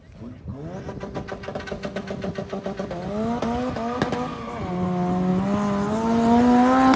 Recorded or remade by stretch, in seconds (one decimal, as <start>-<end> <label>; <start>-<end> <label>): 0.0-7.0 recorded